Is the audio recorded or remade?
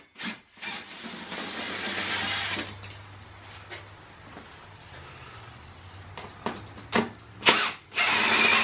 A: recorded